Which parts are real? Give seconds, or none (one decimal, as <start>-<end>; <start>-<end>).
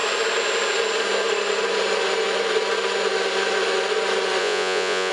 0.0-4.4